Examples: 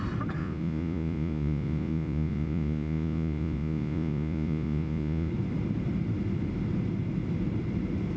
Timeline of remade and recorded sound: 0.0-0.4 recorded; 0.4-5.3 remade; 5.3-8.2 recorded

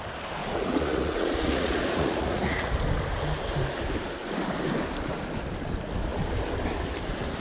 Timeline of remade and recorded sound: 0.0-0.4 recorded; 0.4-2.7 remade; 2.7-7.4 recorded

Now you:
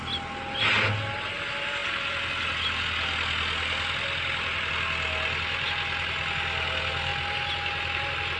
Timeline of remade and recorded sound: 0.0-8.4 recorded

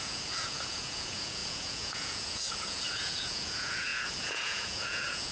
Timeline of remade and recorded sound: 0.0-5.3 remade

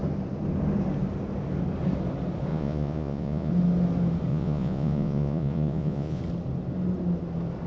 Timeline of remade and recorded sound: 0.0-2.5 recorded; 2.5-3.5 remade; 3.5-4.3 recorded; 4.3-6.2 remade; 6.2-7.7 recorded

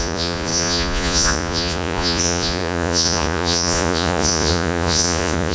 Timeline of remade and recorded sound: 0.0-5.5 remade

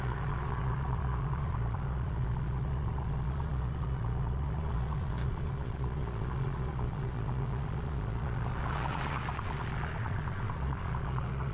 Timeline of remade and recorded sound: 0.0-11.5 remade